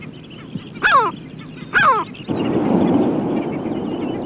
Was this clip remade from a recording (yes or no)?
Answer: no